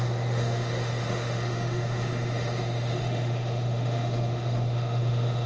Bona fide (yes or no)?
no